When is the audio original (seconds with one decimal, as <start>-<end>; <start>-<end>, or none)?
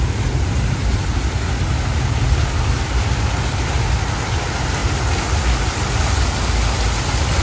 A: 0.0-7.4